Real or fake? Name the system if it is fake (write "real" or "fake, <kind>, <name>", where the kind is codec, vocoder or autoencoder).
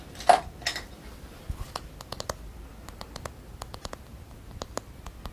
real